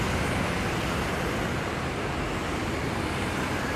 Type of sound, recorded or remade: recorded